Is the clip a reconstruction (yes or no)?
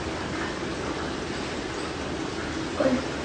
no